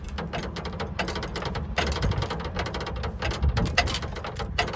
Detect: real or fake real